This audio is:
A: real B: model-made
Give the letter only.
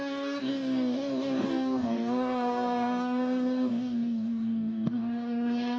B